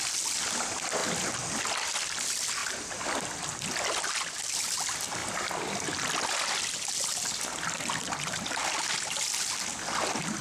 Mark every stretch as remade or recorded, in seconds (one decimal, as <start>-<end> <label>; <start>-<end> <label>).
0.0-10.4 recorded